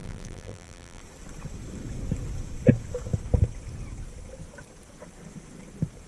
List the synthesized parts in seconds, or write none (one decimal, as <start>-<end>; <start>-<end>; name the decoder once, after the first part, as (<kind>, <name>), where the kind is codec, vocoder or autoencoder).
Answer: 0.0-1.0 (vocoder, BigVGAN v2)